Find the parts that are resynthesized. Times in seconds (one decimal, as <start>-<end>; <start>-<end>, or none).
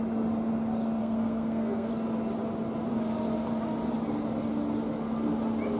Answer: 1.0-1.9